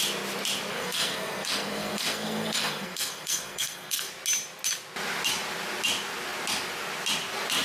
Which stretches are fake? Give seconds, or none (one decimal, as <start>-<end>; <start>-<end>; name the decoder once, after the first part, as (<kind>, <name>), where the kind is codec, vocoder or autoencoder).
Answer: 0.7-4.1 (codec, SNAC)